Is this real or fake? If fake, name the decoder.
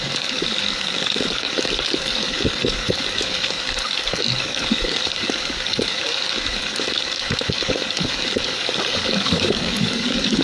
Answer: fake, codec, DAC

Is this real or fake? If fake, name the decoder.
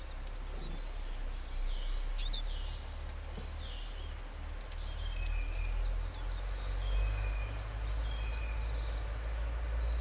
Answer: real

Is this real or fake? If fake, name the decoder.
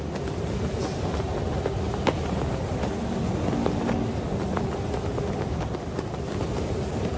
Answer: real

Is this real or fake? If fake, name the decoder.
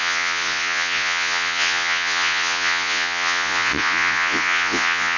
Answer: fake, vocoder, Vocos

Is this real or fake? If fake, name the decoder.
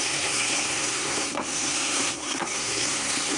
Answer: fake, codec, SNAC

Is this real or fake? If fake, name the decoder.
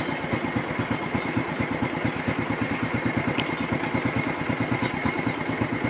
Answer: real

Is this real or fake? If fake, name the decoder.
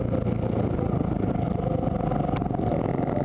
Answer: real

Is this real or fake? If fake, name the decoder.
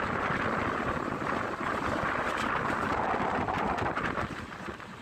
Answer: real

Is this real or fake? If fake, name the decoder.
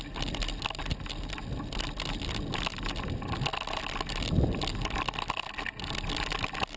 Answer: real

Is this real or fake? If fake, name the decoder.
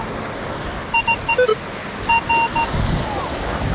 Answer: real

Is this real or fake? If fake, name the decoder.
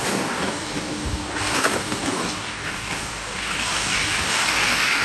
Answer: fake, codec, DAC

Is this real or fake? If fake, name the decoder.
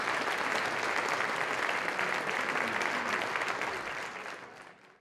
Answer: real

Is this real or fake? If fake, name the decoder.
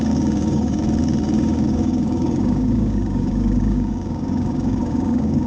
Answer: fake, codec, DAC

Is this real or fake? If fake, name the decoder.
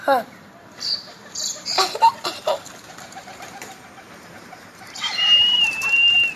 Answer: fake, vocoder, BigVGAN v2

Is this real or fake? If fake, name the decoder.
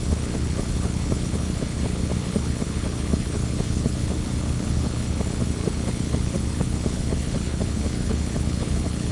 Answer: fake, codec, HILCodec